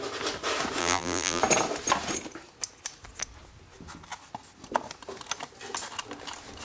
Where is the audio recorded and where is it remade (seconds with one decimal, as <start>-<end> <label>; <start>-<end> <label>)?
0.0-0.8 recorded; 0.8-1.4 remade; 1.4-6.6 recorded